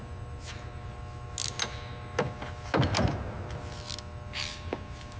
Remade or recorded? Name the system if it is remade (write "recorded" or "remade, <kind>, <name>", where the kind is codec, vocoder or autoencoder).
recorded